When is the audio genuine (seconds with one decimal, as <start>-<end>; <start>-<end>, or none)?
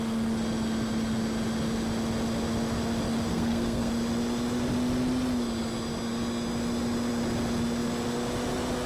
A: 0.0-3.3; 3.9-8.9